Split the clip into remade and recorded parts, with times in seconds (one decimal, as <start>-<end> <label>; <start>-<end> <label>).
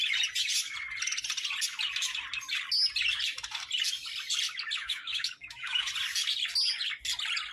0.0-4.8 recorded; 4.8-5.9 remade; 5.9-7.5 recorded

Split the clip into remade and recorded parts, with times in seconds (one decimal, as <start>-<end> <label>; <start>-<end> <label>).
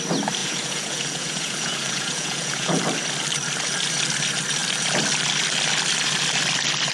0.0-0.4 recorded; 0.4-2.8 remade; 2.8-6.9 recorded